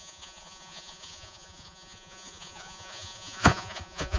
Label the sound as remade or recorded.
remade